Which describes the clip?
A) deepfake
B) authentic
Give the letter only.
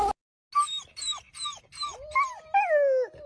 B